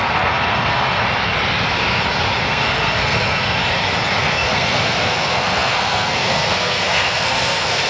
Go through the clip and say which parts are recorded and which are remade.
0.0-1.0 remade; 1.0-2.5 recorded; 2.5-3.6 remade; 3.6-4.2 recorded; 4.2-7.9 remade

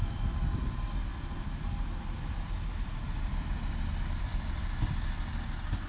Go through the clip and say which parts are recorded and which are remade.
0.0-5.9 recorded

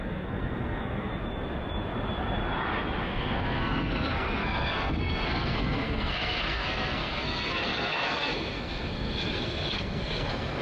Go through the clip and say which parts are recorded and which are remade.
0.0-1.1 remade; 1.1-3.0 recorded; 3.0-10.6 remade

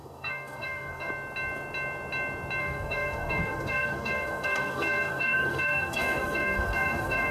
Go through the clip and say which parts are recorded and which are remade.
0.0-1.1 remade; 1.1-2.6 recorded; 2.6-7.3 remade